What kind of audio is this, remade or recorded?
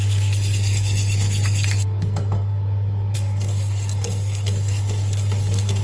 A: remade